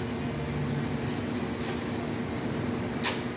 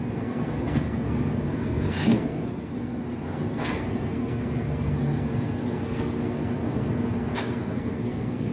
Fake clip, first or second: second